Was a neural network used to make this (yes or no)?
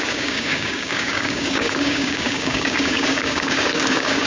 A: yes